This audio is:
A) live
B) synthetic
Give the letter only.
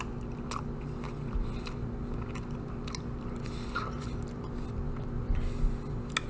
A